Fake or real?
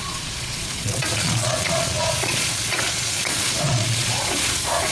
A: fake